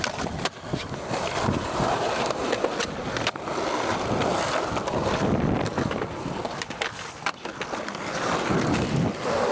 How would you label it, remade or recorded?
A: recorded